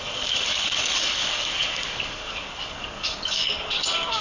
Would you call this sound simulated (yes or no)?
yes